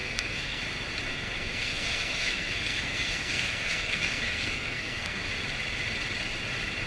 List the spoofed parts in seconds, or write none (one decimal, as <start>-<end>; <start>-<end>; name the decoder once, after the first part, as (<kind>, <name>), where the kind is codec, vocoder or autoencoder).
0.0-0.6 (codec, SNAC); 1.1-5.2